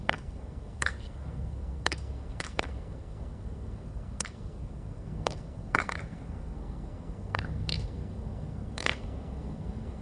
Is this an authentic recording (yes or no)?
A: no